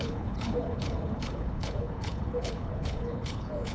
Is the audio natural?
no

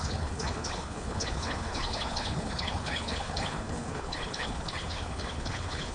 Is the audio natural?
no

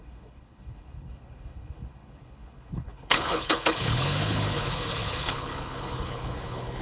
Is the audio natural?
no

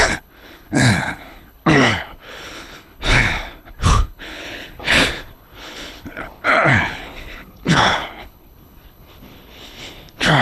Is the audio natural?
no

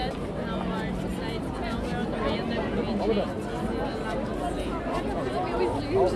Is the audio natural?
yes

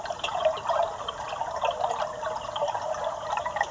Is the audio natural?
yes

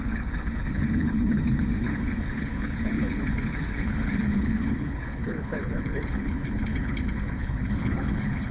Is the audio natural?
no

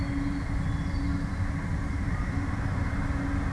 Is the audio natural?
yes